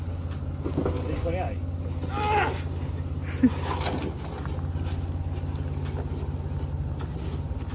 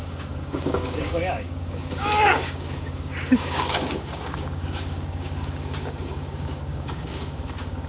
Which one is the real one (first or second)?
first